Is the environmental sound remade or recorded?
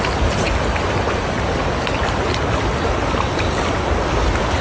recorded